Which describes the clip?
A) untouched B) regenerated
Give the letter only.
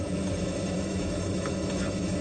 B